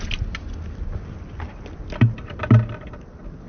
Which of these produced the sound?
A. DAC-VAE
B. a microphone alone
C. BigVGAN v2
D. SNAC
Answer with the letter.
B